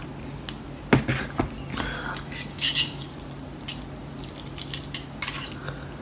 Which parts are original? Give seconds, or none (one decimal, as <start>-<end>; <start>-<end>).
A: 0.0-2.5; 3.1-6.0